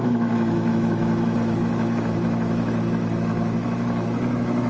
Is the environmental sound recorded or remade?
remade